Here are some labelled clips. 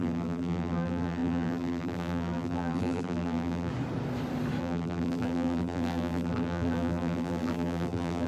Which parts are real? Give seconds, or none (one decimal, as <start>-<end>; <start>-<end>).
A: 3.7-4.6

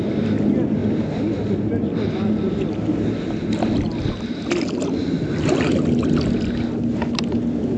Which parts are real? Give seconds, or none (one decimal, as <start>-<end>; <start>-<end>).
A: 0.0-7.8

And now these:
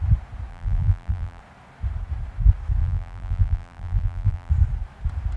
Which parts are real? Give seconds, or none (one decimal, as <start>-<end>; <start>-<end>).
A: 0.0-0.5; 1.4-2.8; 4.5-5.4